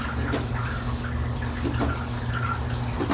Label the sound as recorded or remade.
recorded